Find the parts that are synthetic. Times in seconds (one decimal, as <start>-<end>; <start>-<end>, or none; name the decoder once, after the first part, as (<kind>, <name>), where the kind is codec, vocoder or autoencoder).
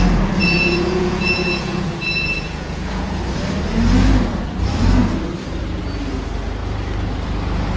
0.4-3.2 (vocoder, Vocos)